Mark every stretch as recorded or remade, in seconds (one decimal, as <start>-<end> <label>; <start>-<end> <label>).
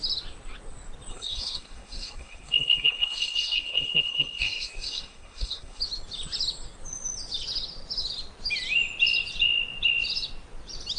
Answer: 0.0-1.1 recorded; 1.1-5.8 remade; 5.8-11.0 recorded